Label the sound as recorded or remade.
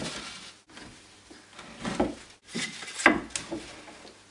recorded